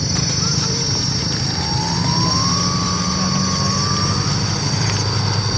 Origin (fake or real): real